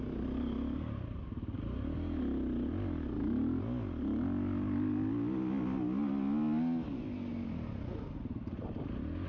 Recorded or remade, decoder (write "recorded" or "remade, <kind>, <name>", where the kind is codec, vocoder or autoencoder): recorded